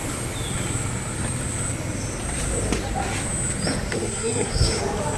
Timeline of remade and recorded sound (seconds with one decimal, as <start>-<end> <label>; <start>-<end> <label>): 0.0-3.9 recorded; 3.9-4.8 remade; 4.8-5.2 recorded